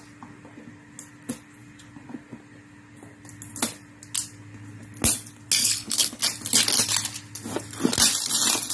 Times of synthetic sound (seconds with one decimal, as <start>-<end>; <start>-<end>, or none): 5.6-6.2